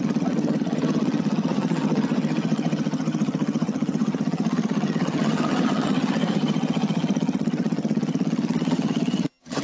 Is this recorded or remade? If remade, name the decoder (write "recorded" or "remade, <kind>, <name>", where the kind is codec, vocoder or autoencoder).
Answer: remade, vocoder, HiFi-GAN